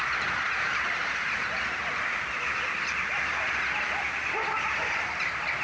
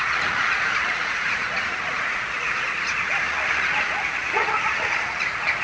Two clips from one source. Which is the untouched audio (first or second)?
first